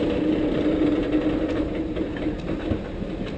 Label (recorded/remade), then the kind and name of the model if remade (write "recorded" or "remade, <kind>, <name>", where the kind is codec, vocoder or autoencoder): recorded